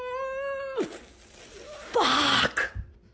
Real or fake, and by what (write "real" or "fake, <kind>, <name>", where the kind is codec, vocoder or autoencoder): real